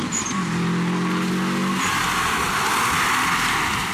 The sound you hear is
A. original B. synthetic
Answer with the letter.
A